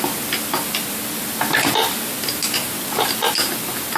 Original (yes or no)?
yes